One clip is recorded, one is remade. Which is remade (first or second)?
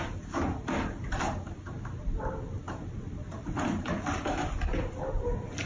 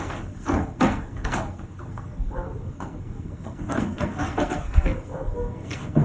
second